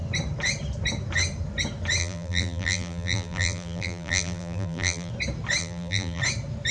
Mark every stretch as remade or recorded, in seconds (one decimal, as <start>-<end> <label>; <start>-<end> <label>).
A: 0.0-2.0 recorded; 2.0-5.1 remade; 5.1-5.6 recorded; 5.6-6.2 remade; 6.2-6.7 recorded